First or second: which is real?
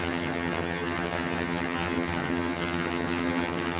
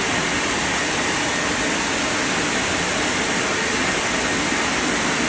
second